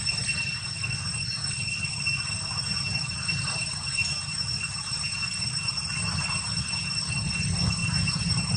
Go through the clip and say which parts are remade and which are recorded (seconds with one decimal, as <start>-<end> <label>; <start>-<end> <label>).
0.0-2.6 recorded; 2.6-5.7 remade; 5.7-7.8 recorded; 7.8-8.6 remade